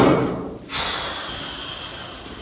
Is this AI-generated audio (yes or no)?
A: no